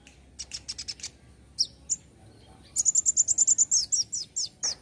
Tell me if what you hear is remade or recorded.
recorded